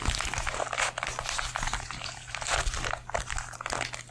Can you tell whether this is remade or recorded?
recorded